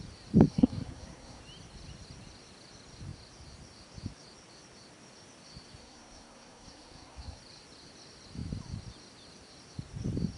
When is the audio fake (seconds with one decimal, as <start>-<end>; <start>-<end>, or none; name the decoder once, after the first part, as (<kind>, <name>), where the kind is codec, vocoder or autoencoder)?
0.5-1.4 (codec, SNAC); 5.8-7.4